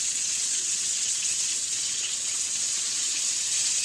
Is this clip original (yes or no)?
no